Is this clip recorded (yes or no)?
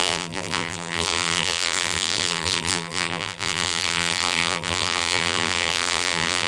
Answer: no